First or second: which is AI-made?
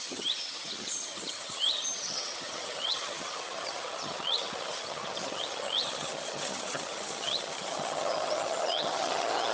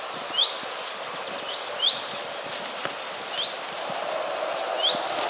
first